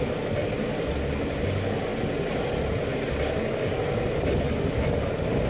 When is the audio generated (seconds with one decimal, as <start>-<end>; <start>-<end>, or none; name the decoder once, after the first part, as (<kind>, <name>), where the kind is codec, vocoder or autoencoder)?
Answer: none

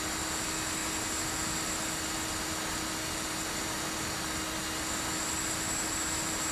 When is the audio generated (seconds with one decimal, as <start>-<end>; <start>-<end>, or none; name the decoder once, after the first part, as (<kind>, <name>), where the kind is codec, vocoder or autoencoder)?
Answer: none

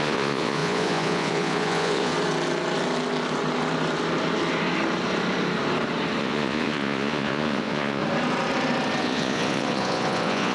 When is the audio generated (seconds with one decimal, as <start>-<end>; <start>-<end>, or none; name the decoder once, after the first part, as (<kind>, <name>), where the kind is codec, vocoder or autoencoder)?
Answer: 0.0-2.1 (vocoder, Vocos); 6.2-8.0; 9.0-10.5

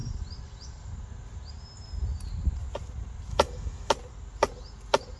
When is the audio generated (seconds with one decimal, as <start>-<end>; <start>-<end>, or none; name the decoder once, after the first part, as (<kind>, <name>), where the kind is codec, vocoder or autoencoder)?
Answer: 3.3-3.9 (autoencoder, DAC-VAE)

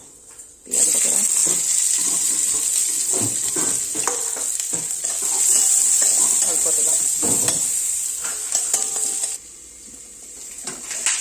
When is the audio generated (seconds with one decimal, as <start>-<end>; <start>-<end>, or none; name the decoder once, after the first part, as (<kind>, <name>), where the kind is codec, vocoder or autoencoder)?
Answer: none

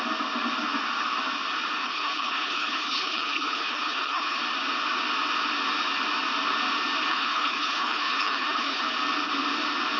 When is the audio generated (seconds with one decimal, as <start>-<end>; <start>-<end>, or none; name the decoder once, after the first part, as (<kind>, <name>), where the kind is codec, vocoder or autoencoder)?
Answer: 1.8-4.4 (codec, HILCodec); 7.1-8.8